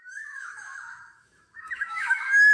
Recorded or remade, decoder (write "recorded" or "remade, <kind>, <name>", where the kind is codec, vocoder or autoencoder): remade, autoencoder, DAC-VAE